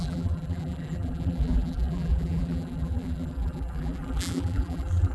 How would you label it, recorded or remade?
remade